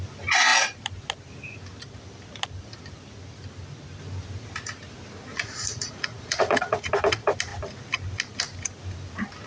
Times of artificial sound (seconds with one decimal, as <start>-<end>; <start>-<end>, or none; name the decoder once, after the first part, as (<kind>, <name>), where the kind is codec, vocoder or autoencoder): 5.3-6.9 (vocoder, Vocos)

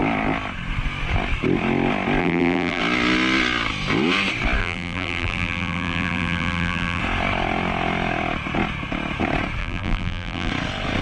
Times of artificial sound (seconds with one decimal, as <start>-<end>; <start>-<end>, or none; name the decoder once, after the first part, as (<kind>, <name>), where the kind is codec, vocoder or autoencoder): 2.2-2.8 (vocoder, BigVGAN v2); 4.6-7.0; 9.6-10.5

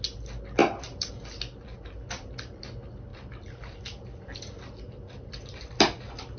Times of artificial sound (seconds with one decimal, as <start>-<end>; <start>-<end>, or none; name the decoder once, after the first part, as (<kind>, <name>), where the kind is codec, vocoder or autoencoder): 0.6-1.1 (vocoder, BigVGAN v2); 3.1-5.7

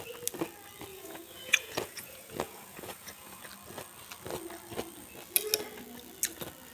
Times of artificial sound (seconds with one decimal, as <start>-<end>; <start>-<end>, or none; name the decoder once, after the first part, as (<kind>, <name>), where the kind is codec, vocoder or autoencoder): 0.9-3.4 (vocoder, Vocos)

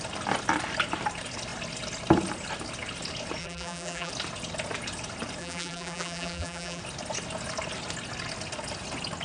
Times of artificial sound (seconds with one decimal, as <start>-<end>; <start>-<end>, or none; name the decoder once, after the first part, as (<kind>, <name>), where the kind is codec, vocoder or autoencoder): 3.4-4.1 (vocoder, BigVGAN v2); 5.4-6.8